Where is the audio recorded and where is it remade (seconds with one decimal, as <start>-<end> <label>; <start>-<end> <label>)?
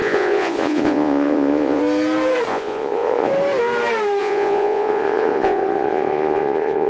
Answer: 0.0-1.8 remade; 1.8-2.5 recorded; 2.5-3.3 remade; 3.3-4.2 recorded; 4.2-6.9 remade